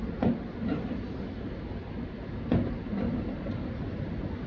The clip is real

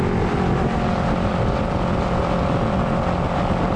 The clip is real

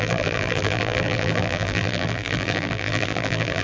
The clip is fake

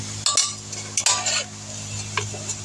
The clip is real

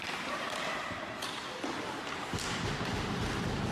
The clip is real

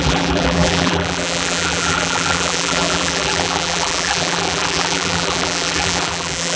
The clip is fake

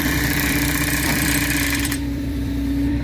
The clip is fake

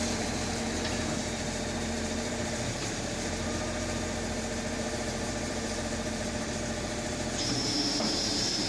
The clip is fake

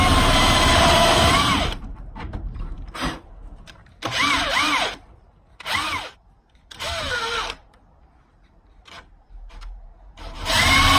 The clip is fake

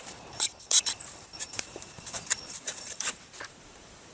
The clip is fake